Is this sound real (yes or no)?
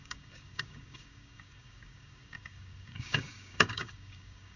no